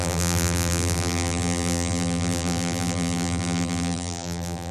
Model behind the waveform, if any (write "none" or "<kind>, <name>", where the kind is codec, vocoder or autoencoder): vocoder, BigVGAN v2